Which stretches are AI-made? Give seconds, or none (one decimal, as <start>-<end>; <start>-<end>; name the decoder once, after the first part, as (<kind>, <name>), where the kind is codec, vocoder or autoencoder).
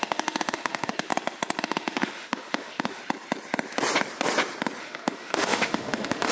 0.0-1.1 (autoencoder, DAC-VAE); 1.6-3.0; 4.8-6.3